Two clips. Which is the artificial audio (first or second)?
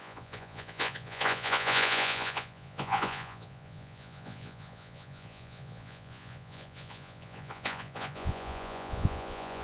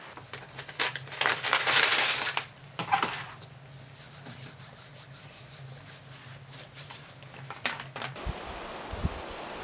first